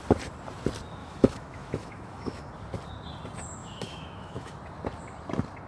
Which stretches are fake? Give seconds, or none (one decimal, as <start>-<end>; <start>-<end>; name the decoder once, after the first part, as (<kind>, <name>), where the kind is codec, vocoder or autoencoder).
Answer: 1.0-2.5 (autoencoder, DAC-VAE); 3.6-4.6